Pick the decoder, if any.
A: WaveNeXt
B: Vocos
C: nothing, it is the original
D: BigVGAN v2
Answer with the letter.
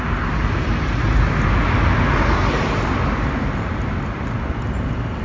C